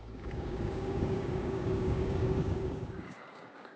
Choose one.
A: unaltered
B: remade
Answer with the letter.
B